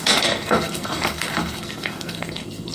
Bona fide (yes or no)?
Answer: no